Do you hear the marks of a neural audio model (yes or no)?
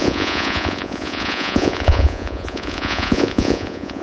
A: yes